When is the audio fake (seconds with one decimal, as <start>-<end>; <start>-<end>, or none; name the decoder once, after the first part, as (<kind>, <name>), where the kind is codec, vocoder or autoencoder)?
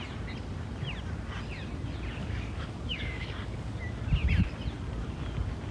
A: 2.2-3.8 (codec, DAC)